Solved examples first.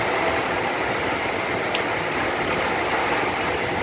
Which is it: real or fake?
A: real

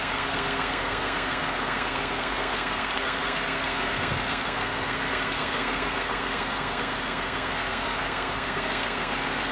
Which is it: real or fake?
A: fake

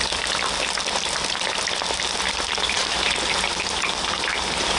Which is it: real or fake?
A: fake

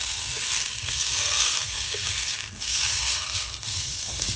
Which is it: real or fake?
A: fake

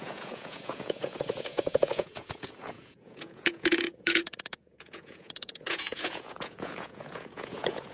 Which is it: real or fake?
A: fake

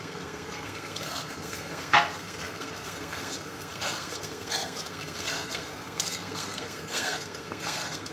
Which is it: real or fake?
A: fake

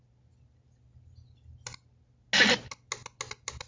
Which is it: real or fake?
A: real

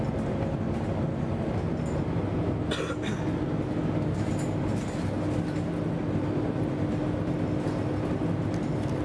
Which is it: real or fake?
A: real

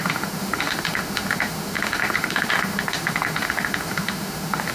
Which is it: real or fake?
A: fake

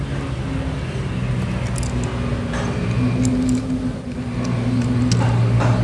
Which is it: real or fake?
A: real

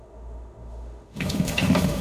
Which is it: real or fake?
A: fake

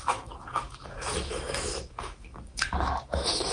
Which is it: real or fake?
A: fake